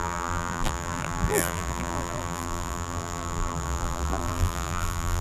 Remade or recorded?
remade